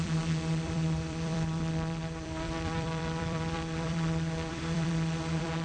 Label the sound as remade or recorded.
remade